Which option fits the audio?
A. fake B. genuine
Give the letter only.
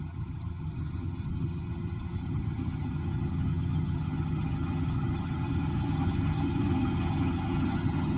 A